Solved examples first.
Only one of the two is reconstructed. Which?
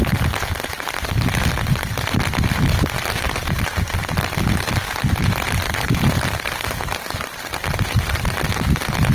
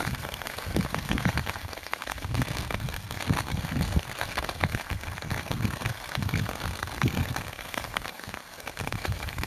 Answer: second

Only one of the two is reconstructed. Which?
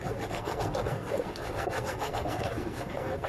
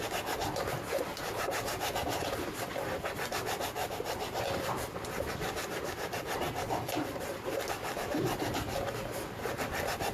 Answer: first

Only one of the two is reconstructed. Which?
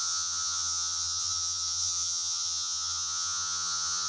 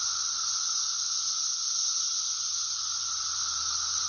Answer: first